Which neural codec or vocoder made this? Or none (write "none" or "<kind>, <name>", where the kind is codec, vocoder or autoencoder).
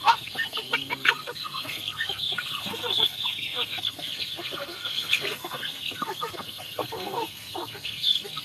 codec, SNAC